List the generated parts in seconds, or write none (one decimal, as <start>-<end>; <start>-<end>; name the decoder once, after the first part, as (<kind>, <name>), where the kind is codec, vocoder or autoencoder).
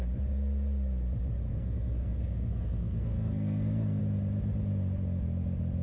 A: 1.5-4.0 (codec, SNAC)